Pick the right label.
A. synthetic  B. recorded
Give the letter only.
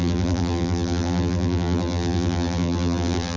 A